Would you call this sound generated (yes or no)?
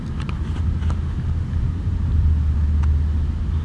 no